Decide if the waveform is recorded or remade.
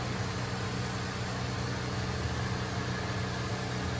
recorded